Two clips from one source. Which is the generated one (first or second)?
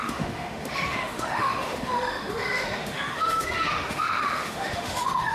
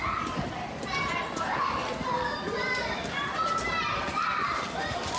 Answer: first